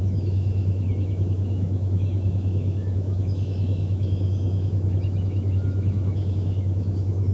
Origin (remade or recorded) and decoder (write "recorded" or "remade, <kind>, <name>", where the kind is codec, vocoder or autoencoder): remade, autoencoder, DAC-VAE